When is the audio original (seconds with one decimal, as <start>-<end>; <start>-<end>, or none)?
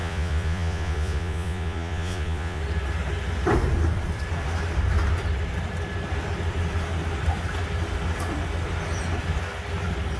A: 2.6-10.2